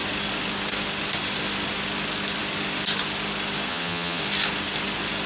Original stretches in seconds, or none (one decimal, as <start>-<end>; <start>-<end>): 0.0-3.7; 4.2-5.3